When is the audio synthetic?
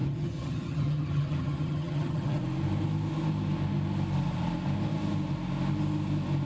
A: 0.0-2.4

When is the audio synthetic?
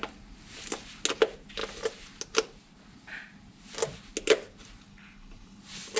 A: 4.9-5.6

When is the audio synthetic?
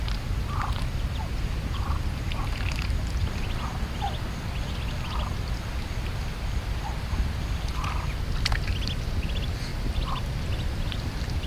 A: none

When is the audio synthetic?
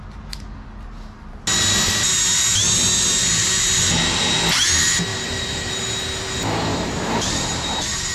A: 5.1-5.7; 6.7-8.1